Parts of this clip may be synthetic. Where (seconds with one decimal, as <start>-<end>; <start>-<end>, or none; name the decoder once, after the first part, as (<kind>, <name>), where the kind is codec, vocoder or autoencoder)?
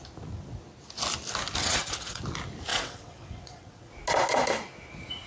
1.6-2.2 (vocoder, WaveNeXt); 2.7-3.9